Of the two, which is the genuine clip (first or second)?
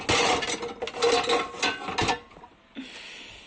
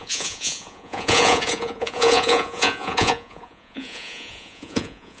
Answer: first